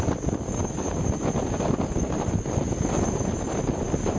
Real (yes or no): yes